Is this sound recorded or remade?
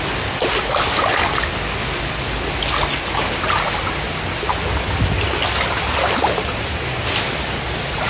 recorded